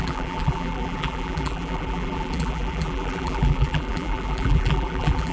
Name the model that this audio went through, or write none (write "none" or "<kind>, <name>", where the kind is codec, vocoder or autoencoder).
vocoder, BigVGAN v2